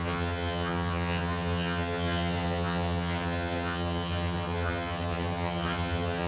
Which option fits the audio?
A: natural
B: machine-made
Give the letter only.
B